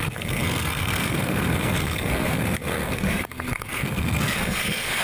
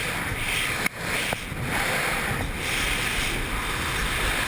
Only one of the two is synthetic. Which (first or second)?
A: first